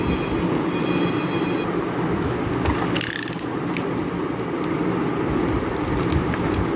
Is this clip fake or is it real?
real